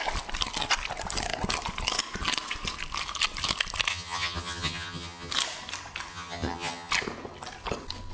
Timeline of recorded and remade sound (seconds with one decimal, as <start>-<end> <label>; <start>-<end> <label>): 0.0-3.9 recorded; 3.9-5.3 remade; 5.3-6.1 recorded; 6.1-6.9 remade; 6.9-8.1 recorded